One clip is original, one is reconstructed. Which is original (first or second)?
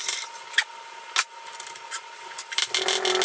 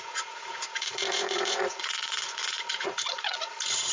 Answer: first